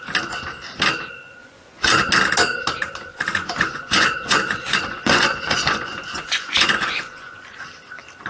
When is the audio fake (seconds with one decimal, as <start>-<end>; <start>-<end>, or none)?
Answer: 1.4-1.9; 3.1-7.6

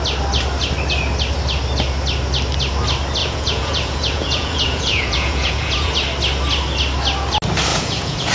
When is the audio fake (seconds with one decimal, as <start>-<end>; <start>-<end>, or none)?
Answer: 3.2-5.9; 7.7-8.3

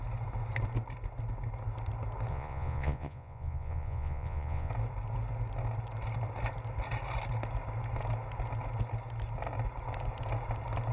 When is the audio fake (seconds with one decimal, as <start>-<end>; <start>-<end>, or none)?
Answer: 2.3-4.7

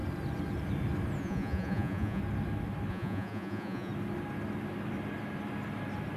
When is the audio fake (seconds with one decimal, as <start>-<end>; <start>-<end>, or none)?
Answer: 1.2-2.2; 2.9-3.9

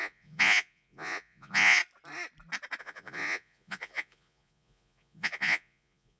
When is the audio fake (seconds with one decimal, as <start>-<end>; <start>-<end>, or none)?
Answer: 0.0-1.8; 2.8-6.2

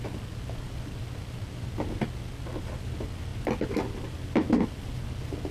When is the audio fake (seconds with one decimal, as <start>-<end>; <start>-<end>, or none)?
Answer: none